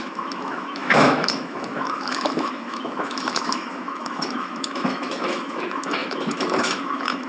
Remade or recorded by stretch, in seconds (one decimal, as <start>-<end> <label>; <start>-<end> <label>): 0.0-7.3 remade